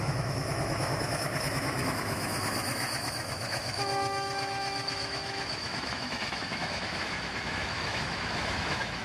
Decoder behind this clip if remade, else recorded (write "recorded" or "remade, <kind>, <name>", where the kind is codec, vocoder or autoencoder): remade, autoencoder, DAC-VAE